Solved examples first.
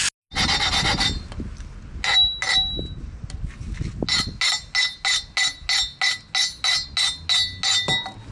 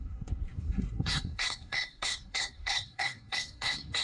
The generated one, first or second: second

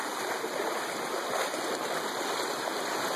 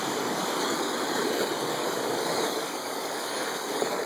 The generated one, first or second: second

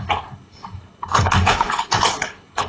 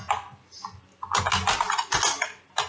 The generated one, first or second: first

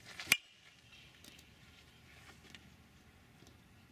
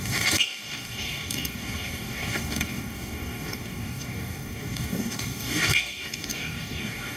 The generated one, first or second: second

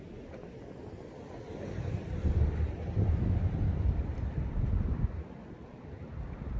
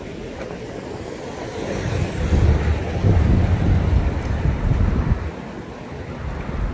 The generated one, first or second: first